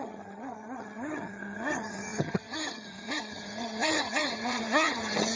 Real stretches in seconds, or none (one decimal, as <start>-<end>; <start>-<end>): none